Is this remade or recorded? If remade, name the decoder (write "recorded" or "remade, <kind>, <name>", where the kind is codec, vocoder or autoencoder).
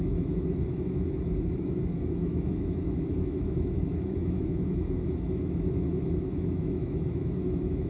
remade, autoencoder, DAC-VAE